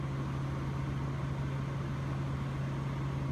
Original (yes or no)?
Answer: yes